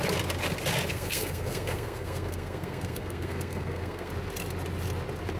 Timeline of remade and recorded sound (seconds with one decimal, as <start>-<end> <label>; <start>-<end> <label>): 0.0-0.9 recorded; 0.9-4.1 remade; 4.1-5.4 recorded